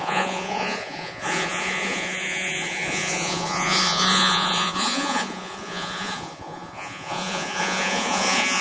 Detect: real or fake fake